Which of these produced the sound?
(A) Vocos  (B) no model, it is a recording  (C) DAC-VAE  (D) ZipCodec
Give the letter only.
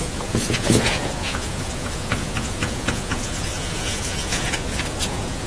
A